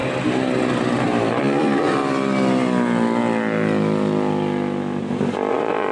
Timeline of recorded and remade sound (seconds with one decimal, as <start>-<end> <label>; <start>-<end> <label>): 0.0-1.4 recorded; 1.4-2.0 remade; 2.0-5.5 recorded; 5.5-5.9 remade